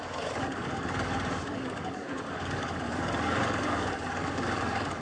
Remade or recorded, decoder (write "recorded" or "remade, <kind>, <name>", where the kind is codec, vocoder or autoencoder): remade, codec, DAC